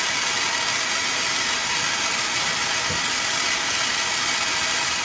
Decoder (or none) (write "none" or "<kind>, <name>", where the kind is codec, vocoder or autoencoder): none